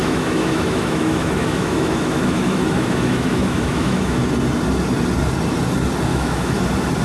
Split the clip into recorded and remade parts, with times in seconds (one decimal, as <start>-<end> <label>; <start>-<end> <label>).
0.0-4.2 remade; 4.2-6.1 recorded; 6.1-6.6 remade; 6.6-7.0 recorded